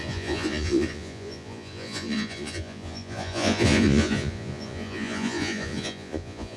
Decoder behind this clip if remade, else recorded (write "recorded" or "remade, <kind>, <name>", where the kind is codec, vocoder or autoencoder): remade, vocoder, Vocos